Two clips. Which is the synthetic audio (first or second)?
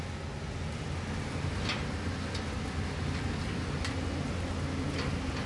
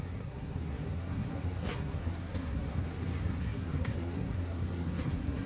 second